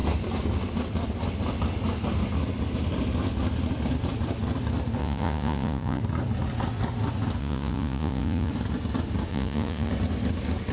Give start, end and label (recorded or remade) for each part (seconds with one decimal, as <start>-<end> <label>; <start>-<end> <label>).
0.0-5.0 recorded; 5.0-6.0 remade; 6.0-7.4 recorded; 7.4-8.5 remade; 8.5-9.3 recorded; 9.3-9.9 remade; 9.9-10.7 recorded